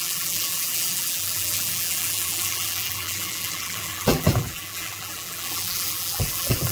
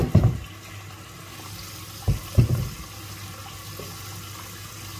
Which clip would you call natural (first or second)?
second